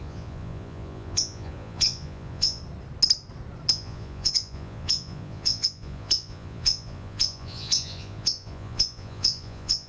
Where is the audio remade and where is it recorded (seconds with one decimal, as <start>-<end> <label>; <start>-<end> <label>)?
0.0-2.6 remade; 2.6-3.7 recorded; 3.7-9.9 remade